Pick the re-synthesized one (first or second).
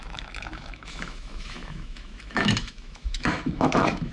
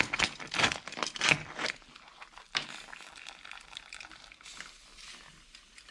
first